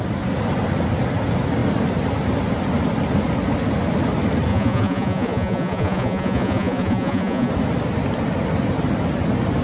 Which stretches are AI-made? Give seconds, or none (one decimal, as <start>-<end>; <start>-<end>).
4.5-7.5